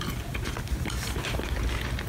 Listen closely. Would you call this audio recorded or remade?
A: recorded